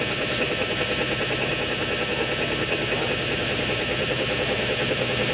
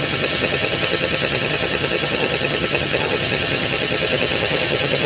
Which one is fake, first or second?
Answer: second